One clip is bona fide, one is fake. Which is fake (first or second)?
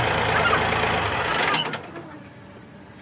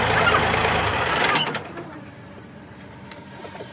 second